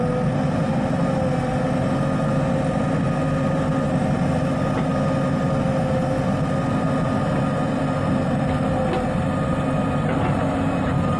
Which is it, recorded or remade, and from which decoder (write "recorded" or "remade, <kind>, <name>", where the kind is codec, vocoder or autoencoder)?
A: recorded